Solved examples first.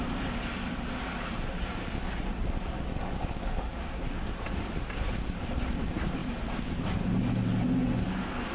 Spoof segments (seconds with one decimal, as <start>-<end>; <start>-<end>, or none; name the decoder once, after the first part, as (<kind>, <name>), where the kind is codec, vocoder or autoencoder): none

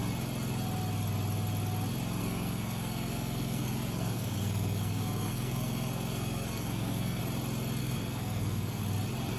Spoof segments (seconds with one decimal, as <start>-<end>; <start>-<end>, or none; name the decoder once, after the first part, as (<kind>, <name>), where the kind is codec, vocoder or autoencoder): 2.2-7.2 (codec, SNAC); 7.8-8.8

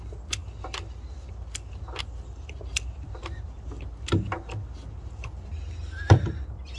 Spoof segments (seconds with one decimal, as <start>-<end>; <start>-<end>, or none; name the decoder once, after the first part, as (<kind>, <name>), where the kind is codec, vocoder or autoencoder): none

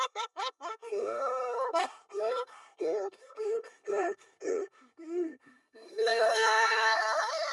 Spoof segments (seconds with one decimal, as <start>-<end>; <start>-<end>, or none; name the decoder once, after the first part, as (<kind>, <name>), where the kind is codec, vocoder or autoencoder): 0.0-7.5 (codec, SNAC)

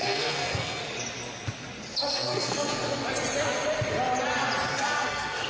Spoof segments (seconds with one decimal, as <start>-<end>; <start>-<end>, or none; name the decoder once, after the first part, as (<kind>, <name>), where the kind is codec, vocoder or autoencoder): 0.0-0.8 (codec, SNAC); 2.1-2.7; 4.7-5.5

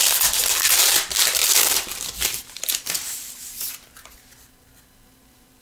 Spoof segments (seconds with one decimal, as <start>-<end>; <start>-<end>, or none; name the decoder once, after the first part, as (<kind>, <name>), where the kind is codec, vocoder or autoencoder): 1.4-3.7 (vocoder, BigVGAN v2)

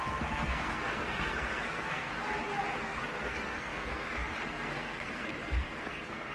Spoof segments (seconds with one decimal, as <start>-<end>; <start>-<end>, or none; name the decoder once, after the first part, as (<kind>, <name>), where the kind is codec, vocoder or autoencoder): 0.0-2.1 (codec, SNAC); 2.8-6.3